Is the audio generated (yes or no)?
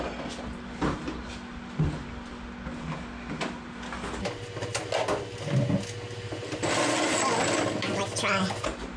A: no